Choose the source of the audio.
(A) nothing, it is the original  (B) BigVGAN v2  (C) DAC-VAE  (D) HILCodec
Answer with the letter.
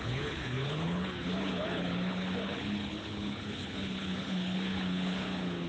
D